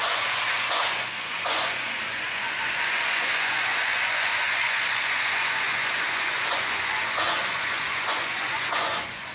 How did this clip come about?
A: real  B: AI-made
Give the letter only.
B